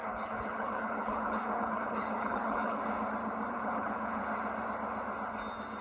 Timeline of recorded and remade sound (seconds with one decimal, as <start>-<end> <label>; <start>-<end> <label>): 0.0-2.8 remade; 2.8-3.5 recorded; 3.5-4.2 remade; 4.2-5.8 recorded